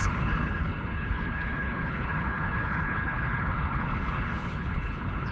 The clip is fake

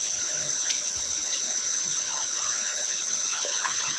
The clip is fake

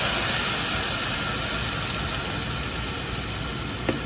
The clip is real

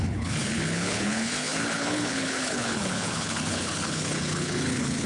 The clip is fake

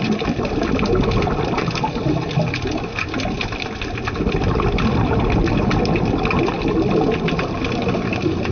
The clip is real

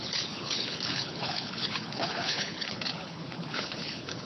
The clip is fake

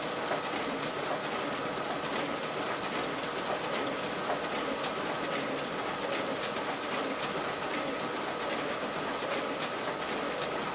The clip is real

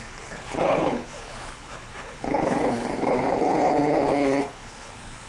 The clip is fake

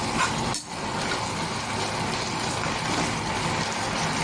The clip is real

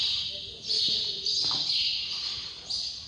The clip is real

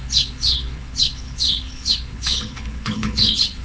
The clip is fake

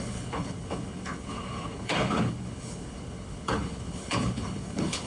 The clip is fake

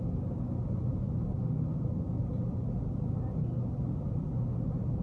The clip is real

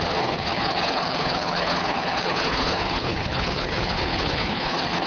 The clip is fake